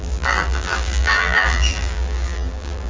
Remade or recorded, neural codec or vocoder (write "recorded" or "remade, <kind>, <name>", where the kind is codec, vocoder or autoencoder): remade, vocoder, BigVGAN v2